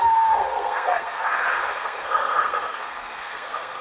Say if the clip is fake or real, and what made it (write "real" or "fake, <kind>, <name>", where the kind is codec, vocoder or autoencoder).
fake, codec, SNAC